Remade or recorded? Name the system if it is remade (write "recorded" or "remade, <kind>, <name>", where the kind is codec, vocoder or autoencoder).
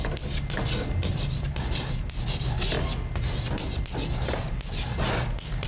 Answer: recorded